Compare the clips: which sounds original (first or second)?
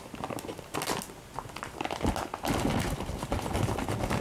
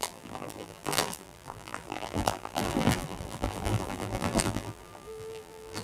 first